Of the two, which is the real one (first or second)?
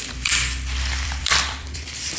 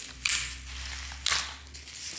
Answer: second